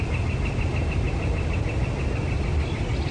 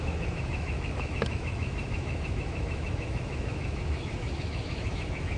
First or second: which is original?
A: first